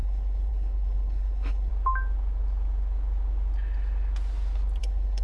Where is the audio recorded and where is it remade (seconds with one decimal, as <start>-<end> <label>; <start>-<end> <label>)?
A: 0.0-1.7 remade; 1.7-4.8 recorded; 4.8-5.2 remade